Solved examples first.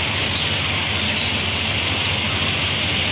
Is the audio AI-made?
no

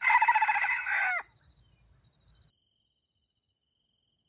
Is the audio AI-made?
no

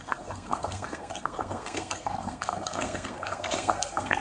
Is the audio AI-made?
yes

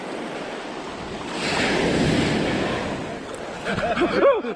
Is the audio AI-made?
no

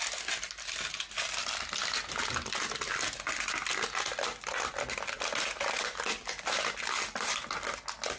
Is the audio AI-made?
no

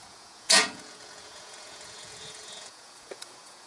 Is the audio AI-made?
yes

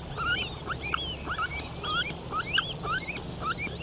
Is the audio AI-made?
no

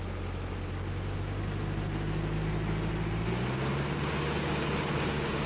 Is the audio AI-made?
no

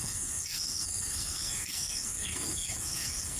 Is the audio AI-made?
yes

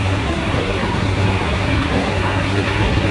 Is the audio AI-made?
yes